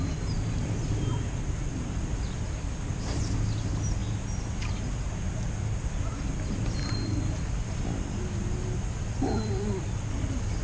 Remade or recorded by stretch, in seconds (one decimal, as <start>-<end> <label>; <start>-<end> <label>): 0.0-10.6 recorded